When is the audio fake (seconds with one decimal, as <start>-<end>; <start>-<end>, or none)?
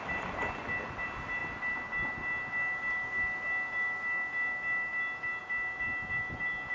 none